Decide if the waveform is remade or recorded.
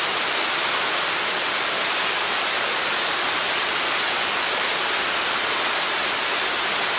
recorded